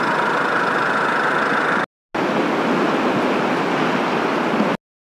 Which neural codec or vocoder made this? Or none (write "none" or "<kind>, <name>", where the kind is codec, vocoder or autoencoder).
none